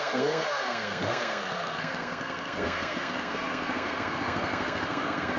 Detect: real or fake fake